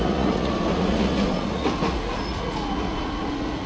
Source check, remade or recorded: remade